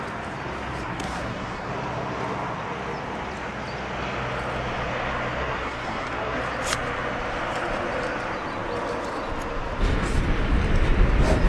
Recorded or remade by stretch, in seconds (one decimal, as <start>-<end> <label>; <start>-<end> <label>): 0.0-0.8 recorded; 0.8-1.7 remade; 1.7-5.4 recorded; 5.4-6.4 remade; 6.4-11.5 recorded

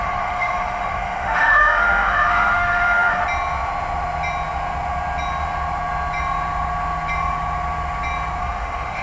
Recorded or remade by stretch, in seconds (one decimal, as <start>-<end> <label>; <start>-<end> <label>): 0.0-3.2 remade; 3.2-8.4 recorded; 8.4-9.0 remade

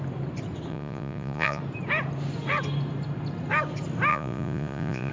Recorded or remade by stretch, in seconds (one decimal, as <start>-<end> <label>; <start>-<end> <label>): 0.0-0.7 recorded; 0.7-1.6 remade; 1.6-4.1 recorded; 4.1-5.1 remade

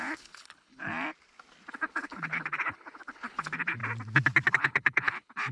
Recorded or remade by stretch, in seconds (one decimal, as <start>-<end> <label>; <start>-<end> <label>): 0.0-0.9 remade; 0.9-1.7 recorded; 1.7-3.8 remade; 3.8-4.5 recorded; 4.5-5.5 remade

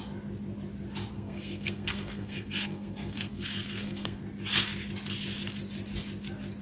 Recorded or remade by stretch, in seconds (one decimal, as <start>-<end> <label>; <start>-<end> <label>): 0.0-1.1 recorded; 1.1-4.2 remade; 4.2-6.6 recorded

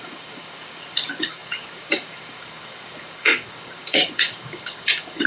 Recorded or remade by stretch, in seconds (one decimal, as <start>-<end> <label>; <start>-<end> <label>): 0.0-5.3 remade